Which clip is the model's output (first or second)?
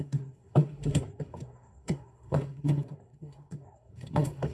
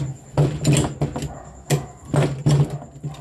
first